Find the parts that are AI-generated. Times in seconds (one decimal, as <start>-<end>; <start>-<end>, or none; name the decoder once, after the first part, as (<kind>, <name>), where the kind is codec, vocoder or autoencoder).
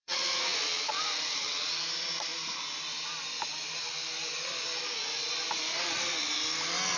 0.0-1.7 (vocoder, WaveNeXt)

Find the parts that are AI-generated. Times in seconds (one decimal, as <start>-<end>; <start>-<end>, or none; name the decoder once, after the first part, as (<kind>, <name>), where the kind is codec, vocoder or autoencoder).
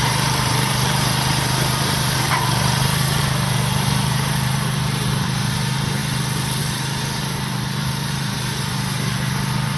0.0-6.0 (vocoder, BigVGAN v2); 6.6-9.8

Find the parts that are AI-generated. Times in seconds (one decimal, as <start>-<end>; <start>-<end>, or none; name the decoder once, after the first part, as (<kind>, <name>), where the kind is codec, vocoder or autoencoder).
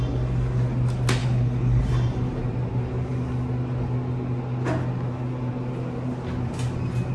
1.2-1.8 (codec, HILCodec)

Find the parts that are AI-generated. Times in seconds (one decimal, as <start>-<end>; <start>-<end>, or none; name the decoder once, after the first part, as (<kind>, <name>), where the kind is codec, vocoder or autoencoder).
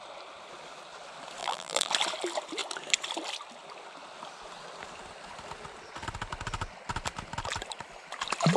1.4-1.9 (vocoder, BigVGAN v2)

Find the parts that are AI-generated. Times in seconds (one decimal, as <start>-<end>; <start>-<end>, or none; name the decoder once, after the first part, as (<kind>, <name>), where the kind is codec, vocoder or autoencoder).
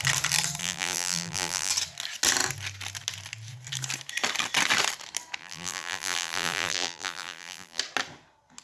0.6-1.7 (vocoder, BigVGAN v2); 5.4-7.8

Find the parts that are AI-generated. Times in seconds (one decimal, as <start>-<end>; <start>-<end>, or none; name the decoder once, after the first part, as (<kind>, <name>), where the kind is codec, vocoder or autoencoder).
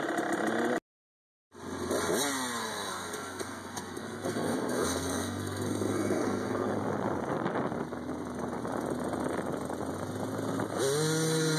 2.6-6.8 (codec, SNAC)